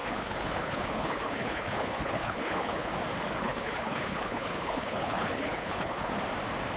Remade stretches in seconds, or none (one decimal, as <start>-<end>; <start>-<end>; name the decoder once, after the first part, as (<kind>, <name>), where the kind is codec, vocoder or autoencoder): 0.0-2.9 (codec, HILCodec); 3.4-6.1